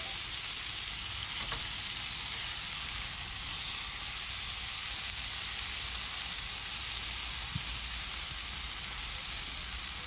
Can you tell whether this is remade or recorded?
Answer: recorded